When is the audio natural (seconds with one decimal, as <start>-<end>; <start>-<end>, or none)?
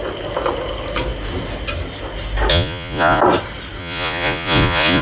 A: 0.0-2.5; 3.2-3.8